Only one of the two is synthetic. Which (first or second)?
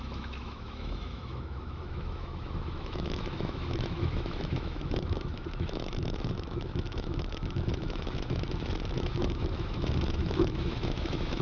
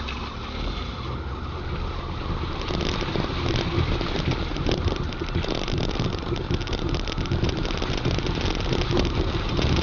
first